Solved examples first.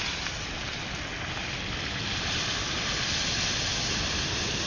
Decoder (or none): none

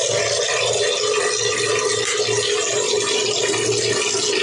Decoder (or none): none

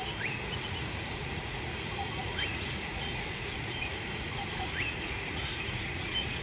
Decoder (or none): vocoder, Vocos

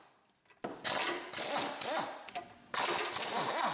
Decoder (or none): none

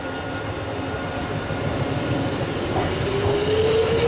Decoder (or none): none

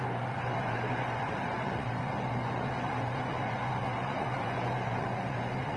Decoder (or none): vocoder, Vocos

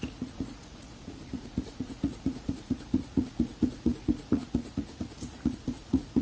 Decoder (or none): vocoder, Vocos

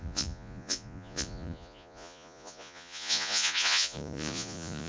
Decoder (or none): vocoder, Vocos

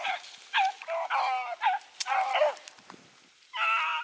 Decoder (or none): none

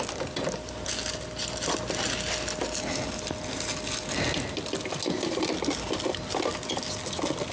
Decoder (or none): none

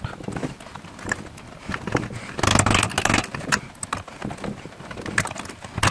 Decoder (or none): none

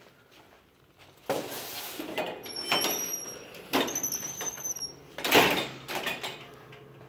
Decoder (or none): none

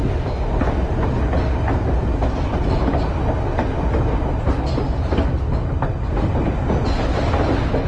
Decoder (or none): none